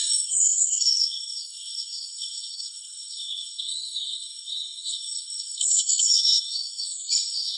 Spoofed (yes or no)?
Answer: yes